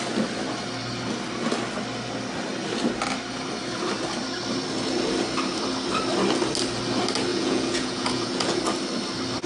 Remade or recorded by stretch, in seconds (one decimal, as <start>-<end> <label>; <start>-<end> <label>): 0.0-7.3 recorded; 7.3-8.6 remade; 8.6-9.5 recorded